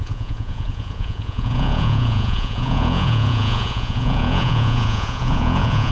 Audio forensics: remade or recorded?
remade